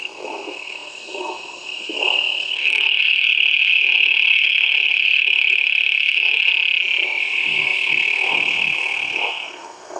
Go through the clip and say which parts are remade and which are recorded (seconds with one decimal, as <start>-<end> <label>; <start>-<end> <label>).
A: 0.0-6.5 remade; 6.5-7.2 recorded; 7.2-10.0 remade

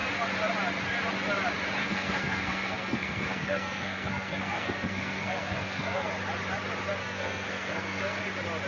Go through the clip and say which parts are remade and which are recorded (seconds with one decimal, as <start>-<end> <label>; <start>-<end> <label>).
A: 0.0-1.8 recorded; 1.8-6.1 remade; 6.1-7.0 recorded; 7.0-8.2 remade; 8.2-8.7 recorded

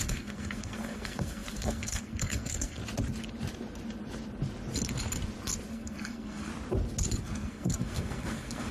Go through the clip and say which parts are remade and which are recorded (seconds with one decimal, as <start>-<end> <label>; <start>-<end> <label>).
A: 0.0-2.8 remade; 2.8-5.7 recorded; 5.7-6.5 remade; 6.5-7.2 recorded; 7.2-8.7 remade

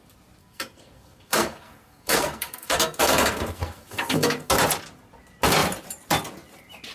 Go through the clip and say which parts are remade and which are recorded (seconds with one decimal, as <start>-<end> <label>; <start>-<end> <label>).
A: 0.0-0.4 recorded; 0.4-4.5 remade; 4.5-6.9 recorded